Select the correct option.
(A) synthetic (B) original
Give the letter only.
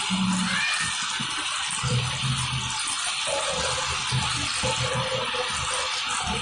B